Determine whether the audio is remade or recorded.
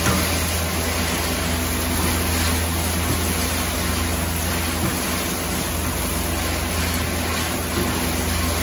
recorded